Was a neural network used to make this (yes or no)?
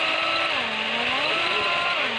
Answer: no